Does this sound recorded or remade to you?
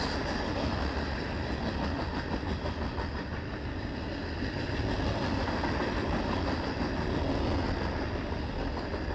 recorded